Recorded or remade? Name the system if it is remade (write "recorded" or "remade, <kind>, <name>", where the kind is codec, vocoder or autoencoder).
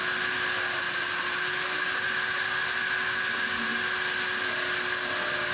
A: recorded